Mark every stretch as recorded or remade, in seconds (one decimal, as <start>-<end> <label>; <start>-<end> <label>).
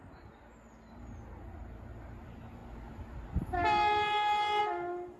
0.0-5.2 recorded